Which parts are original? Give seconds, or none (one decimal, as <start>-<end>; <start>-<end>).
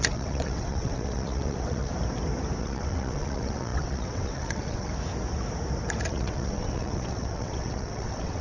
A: 1.9-2.6; 4.9-6.1